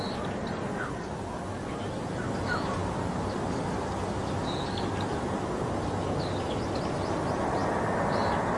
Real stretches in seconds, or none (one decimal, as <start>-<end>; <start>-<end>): 0.0-8.6